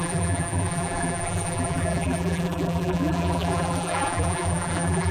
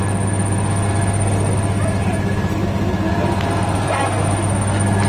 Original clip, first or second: second